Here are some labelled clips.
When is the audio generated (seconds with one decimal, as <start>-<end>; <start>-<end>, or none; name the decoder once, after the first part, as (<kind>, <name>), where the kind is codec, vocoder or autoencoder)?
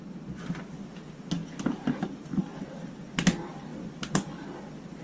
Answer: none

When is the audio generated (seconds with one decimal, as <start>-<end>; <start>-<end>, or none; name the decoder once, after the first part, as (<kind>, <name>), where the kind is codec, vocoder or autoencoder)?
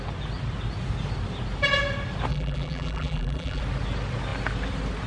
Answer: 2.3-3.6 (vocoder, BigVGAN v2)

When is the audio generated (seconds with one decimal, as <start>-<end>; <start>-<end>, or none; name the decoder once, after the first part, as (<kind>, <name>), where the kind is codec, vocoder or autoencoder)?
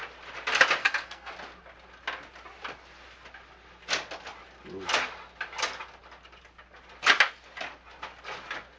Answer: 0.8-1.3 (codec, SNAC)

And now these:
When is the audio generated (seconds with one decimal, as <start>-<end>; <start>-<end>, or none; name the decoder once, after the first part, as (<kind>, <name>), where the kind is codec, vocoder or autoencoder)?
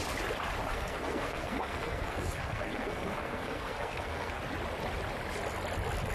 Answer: 0.7-4.4 (codec, SNAC)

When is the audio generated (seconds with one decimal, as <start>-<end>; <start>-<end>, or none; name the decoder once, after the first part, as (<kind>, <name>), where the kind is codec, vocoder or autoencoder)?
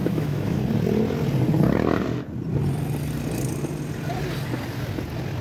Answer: 0.0-0.6 (autoencoder, DAC-VAE)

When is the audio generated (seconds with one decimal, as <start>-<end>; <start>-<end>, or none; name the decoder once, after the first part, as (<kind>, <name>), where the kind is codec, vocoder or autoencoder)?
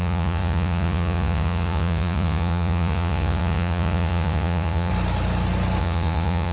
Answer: 0.0-4.9 (vocoder, Vocos); 5.8-6.5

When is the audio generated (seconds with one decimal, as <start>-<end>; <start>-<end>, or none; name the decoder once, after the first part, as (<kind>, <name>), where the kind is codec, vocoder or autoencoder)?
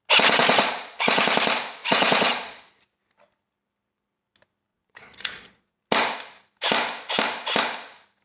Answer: 0.4-1.2 (vocoder, Vocos); 1.8-2.6; 4.7-5.8